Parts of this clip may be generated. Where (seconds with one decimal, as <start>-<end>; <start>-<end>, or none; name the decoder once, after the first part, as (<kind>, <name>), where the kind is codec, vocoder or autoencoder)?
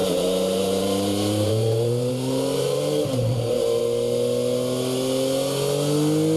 0.0-3.8 (vocoder, BigVGAN v2)